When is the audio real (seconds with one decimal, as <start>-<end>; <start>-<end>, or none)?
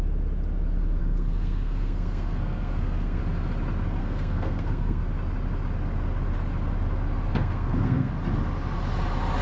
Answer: 0.0-1.0; 3.2-4.0; 5.0-7.3; 8.1-9.4